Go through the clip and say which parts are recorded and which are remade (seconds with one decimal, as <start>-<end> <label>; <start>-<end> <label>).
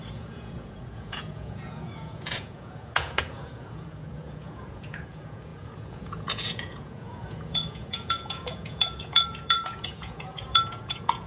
0.0-11.3 remade